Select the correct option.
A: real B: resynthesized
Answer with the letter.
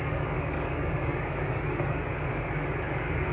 B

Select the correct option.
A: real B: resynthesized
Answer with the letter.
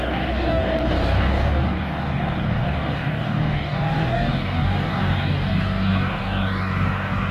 B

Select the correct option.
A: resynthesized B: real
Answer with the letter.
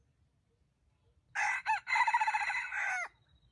B